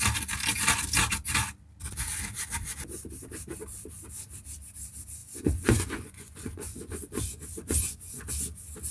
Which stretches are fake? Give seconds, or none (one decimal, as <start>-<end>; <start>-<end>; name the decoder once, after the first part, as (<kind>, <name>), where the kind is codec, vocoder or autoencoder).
5.2-8.3 (vocoder, Vocos)